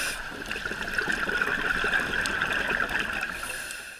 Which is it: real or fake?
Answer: real